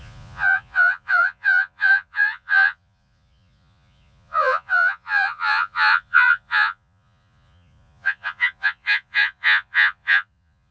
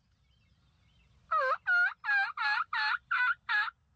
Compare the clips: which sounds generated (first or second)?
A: first